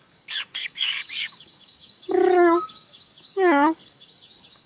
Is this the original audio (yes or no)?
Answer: no